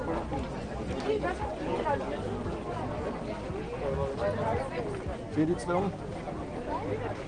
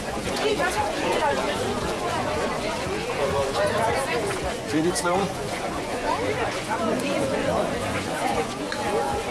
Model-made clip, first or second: second